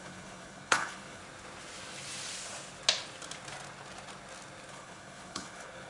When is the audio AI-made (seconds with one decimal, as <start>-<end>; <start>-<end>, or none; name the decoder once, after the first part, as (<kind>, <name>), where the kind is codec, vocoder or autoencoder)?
0.0-1.2 (codec, HILCodec); 4.7-5.9